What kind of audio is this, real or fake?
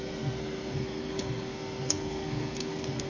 fake